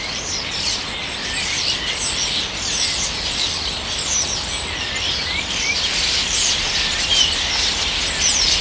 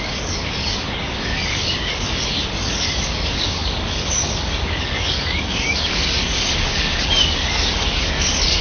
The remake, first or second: second